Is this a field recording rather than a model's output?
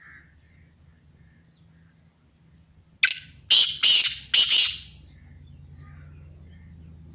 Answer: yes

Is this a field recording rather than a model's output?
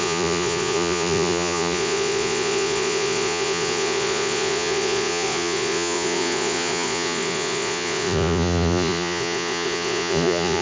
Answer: no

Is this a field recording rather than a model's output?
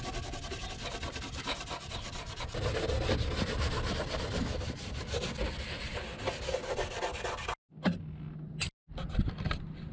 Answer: yes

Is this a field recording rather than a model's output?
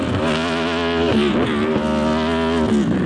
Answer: yes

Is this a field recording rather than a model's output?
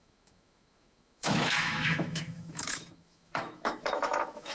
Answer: no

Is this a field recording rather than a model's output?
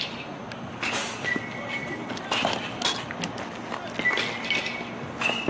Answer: yes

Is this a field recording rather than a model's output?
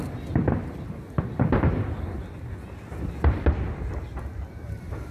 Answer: yes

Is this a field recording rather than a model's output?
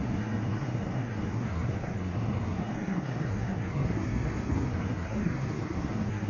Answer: no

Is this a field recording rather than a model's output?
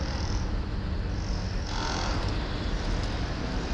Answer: yes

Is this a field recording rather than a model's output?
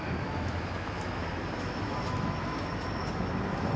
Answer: no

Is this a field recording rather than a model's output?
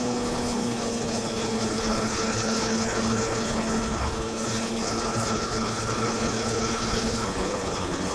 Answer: no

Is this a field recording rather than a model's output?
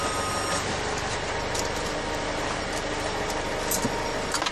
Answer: yes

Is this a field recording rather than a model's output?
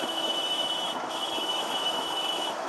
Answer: no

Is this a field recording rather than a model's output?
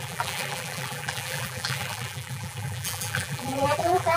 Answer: no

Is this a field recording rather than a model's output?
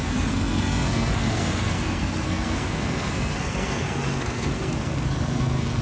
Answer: no